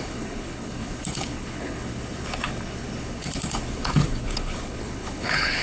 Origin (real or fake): fake